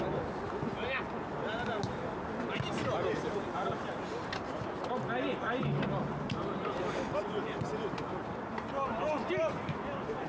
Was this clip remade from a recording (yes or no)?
no